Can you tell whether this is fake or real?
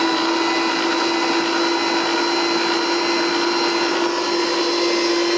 real